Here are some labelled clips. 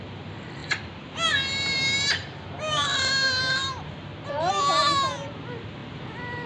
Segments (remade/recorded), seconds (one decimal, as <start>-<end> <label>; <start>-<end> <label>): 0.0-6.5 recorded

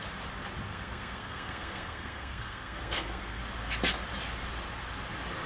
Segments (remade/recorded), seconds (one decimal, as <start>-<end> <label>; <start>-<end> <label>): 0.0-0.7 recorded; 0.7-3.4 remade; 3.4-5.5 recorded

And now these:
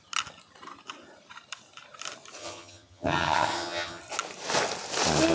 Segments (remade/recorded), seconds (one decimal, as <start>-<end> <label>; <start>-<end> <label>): 0.0-2.4 recorded; 2.4-4.0 remade; 4.0-5.3 recorded

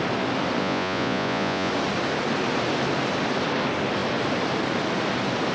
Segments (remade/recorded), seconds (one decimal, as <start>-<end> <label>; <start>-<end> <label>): 0.0-0.6 recorded; 0.6-1.7 remade; 1.7-5.5 recorded

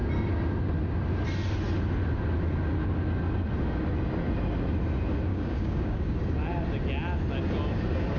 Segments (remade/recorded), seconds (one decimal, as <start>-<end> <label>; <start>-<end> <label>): 0.0-5.3 recorded; 5.3-6.2 remade; 6.2-8.2 recorded

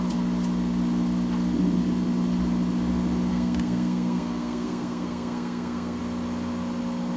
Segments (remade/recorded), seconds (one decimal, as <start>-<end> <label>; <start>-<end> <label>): 0.0-3.3 recorded; 3.3-6.0 remade; 6.0-7.2 recorded